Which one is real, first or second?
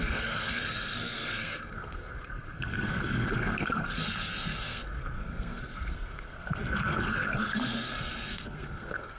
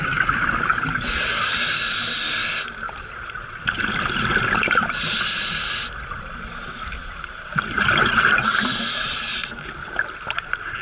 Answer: second